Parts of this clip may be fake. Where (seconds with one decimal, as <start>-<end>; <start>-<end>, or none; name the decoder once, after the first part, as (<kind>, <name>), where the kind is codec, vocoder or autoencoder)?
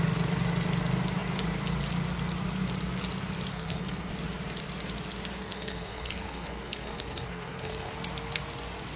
3.5-4.1 (codec, SNAC); 5.4-7.9